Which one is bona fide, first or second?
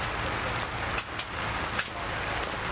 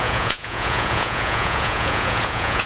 first